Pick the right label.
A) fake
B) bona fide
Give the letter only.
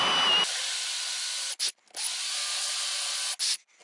B